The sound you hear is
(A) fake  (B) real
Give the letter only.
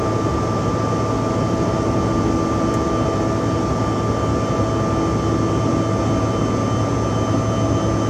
B